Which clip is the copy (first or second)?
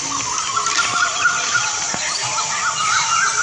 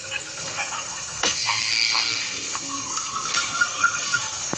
second